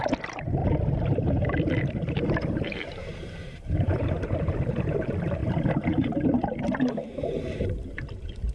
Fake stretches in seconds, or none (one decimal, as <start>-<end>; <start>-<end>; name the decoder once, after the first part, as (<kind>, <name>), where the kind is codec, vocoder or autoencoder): 0.0-0.6 (vocoder, BigVGAN v2); 1.8-5.4; 6.9-8.5